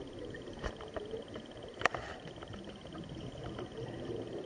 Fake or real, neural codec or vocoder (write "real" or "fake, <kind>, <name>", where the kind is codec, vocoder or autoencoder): real